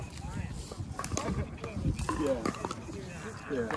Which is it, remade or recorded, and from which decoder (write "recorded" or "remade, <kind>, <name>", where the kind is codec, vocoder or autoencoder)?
recorded